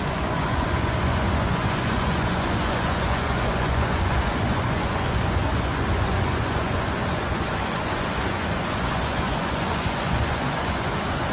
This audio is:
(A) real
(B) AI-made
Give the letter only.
B